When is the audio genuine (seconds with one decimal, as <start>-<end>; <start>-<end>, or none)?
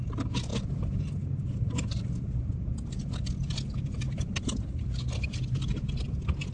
0.0-6.5